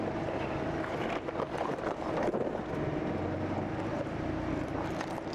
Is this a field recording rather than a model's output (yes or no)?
yes